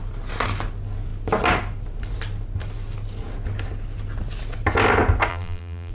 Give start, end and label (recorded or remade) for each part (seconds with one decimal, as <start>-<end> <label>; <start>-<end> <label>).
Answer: 0.0-5.3 recorded; 5.3-5.9 remade

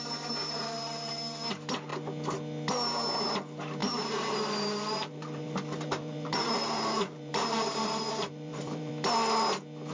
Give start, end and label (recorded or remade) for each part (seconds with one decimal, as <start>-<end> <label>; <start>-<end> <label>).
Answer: 0.0-0.4 recorded; 0.4-1.1 remade; 1.1-3.8 recorded; 3.8-8.9 remade; 8.9-9.9 recorded